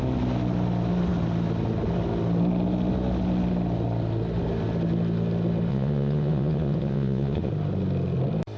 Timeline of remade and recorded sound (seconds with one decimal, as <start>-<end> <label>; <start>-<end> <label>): 0.0-5.7 recorded; 5.7-7.5 remade; 7.5-8.6 recorded